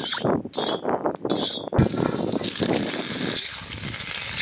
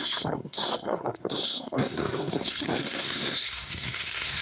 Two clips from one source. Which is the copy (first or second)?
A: second